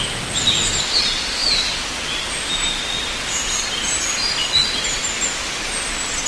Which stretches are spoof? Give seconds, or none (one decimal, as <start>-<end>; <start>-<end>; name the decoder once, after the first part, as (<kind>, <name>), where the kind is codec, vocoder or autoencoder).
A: none